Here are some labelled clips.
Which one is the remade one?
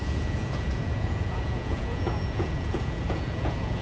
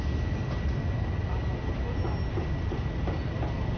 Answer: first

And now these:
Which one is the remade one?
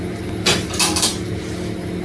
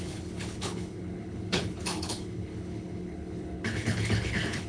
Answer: second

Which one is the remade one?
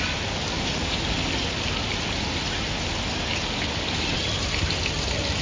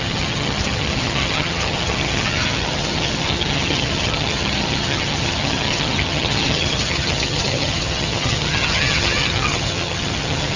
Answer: second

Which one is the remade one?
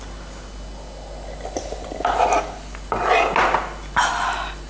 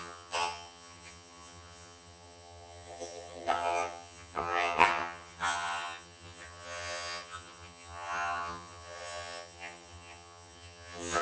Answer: second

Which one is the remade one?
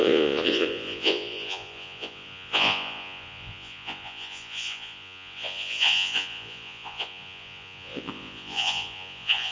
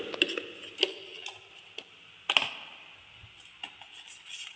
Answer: first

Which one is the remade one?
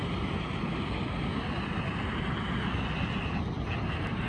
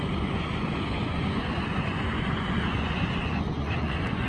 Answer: second